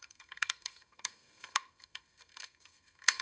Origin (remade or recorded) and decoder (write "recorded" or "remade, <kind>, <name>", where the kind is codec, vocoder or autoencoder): remade, codec, SNAC